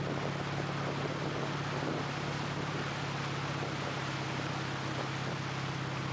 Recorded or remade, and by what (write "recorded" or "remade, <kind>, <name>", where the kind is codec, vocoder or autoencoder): recorded